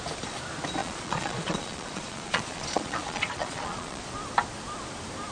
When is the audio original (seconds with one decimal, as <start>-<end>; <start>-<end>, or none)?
0.0-0.8; 4.0-5.3